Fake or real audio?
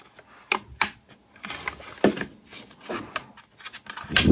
real